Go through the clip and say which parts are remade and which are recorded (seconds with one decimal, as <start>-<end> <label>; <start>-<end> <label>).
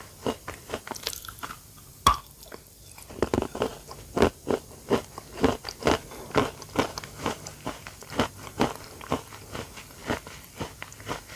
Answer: 0.0-3.7 remade; 3.7-7.3 recorded; 7.3-10.0 remade; 10.0-11.0 recorded; 11.0-11.4 remade